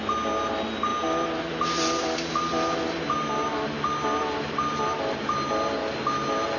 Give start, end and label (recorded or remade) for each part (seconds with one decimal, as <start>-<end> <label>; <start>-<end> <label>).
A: 0.0-6.6 recorded